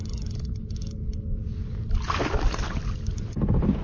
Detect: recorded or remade recorded